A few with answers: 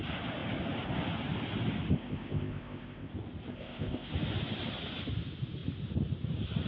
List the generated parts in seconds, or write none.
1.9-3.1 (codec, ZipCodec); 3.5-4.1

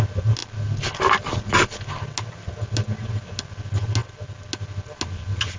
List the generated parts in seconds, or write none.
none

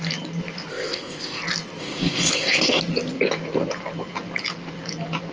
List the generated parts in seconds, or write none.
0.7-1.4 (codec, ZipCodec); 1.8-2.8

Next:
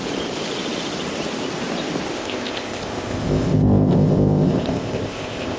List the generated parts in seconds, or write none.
2.1-5.6 (codec, ZipCodec)

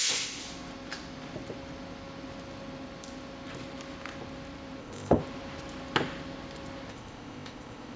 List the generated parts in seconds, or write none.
0.0-0.4 (codec, ZipCodec); 4.8-5.2; 6.9-8.0